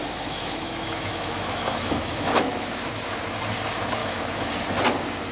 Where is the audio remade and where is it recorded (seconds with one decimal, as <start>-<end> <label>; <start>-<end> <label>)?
0.0-3.2 remade; 3.2-4.0 recorded; 4.0-4.5 remade; 4.5-5.3 recorded